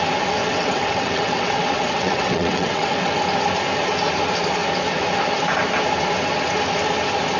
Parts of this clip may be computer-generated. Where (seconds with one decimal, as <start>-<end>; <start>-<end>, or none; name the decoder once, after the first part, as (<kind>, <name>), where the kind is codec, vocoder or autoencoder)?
0.4-3.2 (vocoder, WaveNeXt)